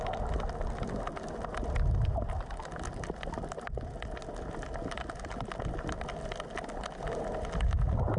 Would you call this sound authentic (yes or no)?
yes